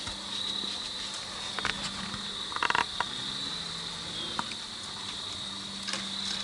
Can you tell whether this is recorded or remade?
recorded